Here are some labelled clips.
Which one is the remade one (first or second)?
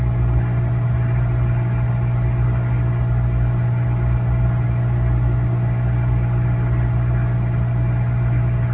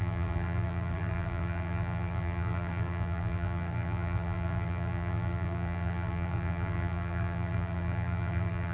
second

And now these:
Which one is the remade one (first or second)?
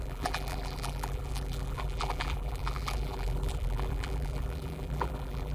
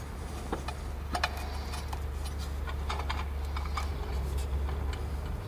first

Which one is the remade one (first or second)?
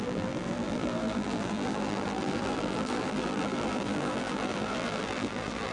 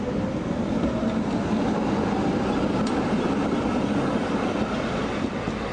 first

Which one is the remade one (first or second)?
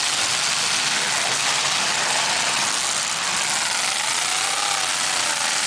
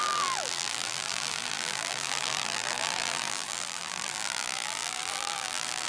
second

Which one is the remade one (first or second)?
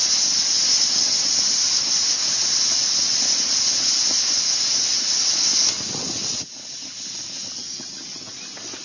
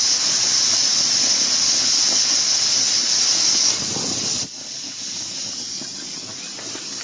second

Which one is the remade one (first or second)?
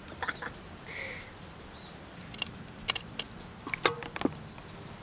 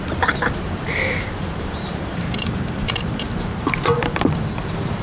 second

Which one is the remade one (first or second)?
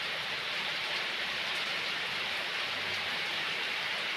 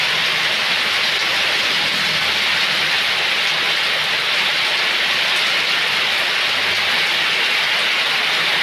first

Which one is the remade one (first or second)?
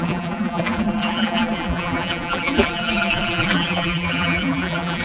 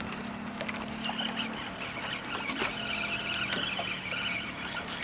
first